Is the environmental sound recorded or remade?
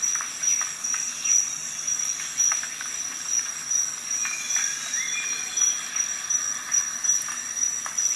recorded